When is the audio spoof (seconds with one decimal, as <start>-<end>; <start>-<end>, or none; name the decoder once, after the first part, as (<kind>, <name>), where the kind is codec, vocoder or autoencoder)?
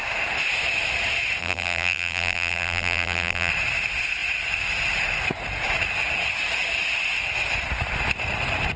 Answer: 1.4-3.5 (vocoder, BigVGAN v2)